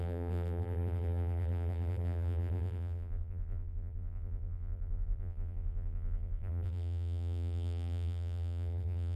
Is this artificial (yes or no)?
yes